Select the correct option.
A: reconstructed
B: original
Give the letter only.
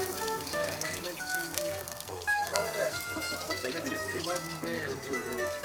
A